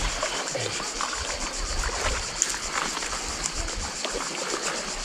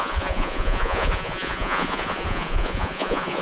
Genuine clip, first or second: first